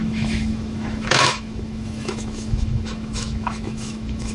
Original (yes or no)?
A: no